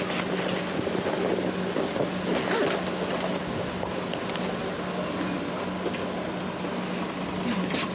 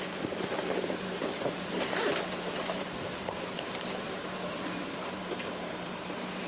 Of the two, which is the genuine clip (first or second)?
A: first